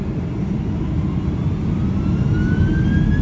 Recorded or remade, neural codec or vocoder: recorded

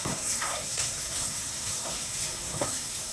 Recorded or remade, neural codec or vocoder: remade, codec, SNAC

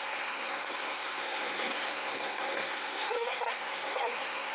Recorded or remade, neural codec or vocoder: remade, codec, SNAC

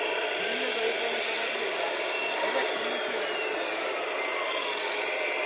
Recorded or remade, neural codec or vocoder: recorded